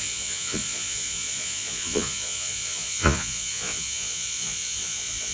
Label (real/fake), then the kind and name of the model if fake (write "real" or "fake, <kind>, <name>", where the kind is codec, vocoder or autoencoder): fake, vocoder, Vocos